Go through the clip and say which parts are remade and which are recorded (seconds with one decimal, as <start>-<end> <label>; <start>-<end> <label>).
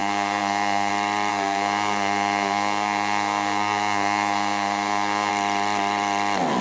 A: 0.0-0.9 remade; 0.9-1.3 recorded; 1.3-5.3 remade; 5.3-6.6 recorded